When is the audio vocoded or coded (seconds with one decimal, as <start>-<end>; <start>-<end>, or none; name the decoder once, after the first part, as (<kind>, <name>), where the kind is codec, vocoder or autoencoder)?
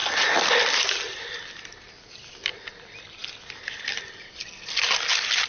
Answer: none